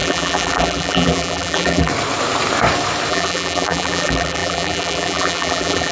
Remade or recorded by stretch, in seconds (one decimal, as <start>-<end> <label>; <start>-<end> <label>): 0.0-1.9 remade; 1.9-3.1 recorded; 3.1-5.9 remade